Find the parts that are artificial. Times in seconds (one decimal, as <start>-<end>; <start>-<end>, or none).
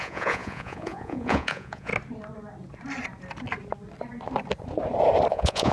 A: 0.0-1.9; 5.3-5.7